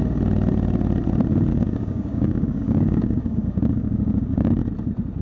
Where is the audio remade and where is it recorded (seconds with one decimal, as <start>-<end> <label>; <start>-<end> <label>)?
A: 0.0-1.5 recorded; 1.5-4.6 remade; 4.6-5.2 recorded